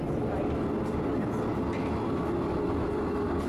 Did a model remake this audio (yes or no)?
no